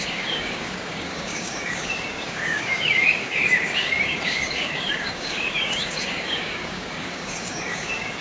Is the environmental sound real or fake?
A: fake